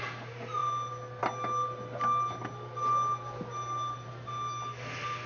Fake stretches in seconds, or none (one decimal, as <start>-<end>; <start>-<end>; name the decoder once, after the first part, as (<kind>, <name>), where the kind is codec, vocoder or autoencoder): none